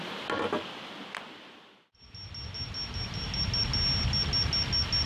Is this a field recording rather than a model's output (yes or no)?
yes